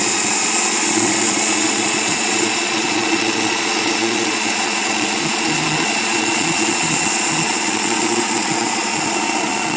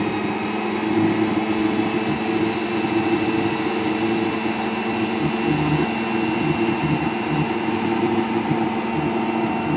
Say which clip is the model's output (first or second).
first